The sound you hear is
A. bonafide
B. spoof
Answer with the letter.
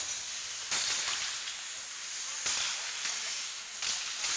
A